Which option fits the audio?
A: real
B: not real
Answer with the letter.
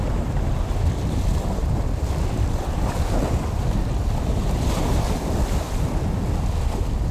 A